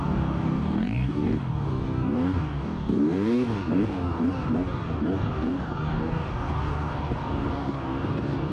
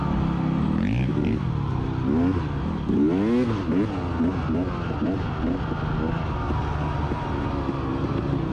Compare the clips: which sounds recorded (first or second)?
second